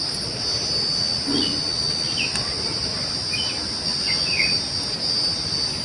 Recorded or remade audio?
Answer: recorded